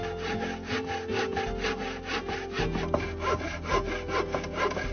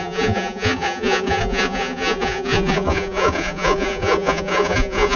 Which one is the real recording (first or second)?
first